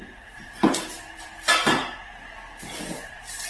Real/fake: fake